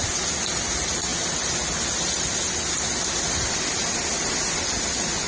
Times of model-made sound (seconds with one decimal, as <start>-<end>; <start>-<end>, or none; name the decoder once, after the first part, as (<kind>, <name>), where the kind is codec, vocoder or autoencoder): none